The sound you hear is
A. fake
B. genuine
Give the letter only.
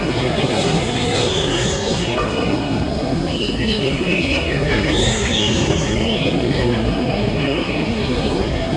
A